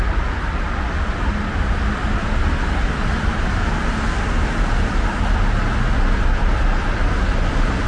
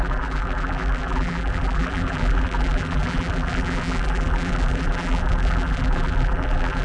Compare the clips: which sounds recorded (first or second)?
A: first